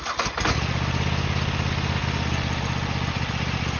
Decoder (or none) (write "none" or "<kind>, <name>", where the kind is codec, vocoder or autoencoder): none